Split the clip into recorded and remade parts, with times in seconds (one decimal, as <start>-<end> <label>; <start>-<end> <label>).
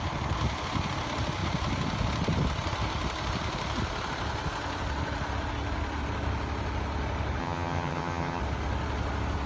0.0-7.4 recorded; 7.4-8.4 remade; 8.4-9.5 recorded